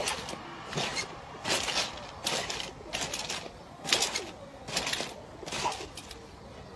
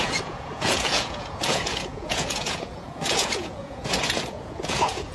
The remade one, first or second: second